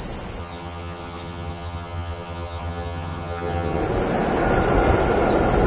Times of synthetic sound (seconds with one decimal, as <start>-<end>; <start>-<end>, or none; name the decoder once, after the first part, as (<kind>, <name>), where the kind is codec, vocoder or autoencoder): 0.4-3.8 (vocoder, HiFi-GAN)